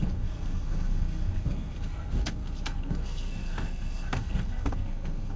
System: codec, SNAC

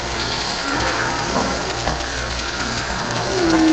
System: codec, SNAC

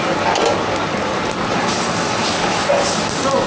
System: none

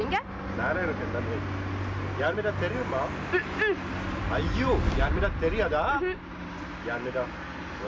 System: none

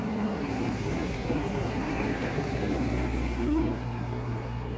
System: codec, SNAC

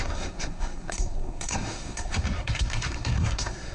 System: codec, SNAC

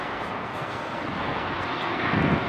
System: codec, SNAC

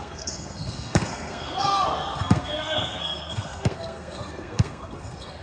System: codec, SNAC